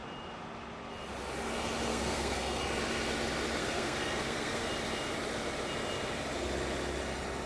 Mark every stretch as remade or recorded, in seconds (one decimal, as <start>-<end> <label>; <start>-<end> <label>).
0.0-1.9 recorded; 1.9-2.6 remade; 2.6-3.6 recorded; 3.6-4.7 remade; 4.7-7.5 recorded